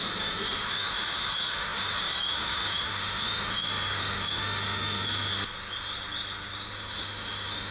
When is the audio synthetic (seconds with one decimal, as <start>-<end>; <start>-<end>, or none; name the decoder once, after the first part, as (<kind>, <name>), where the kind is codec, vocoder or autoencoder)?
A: 0.0-5.3 (autoencoder, DAC-VAE); 6.7-7.7